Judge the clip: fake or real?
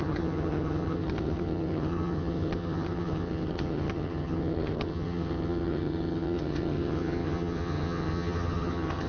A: fake